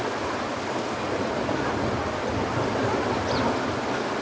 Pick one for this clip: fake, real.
real